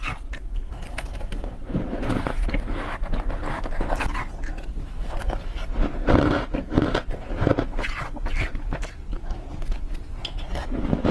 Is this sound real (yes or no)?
yes